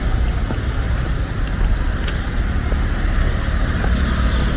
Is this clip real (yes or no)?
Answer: yes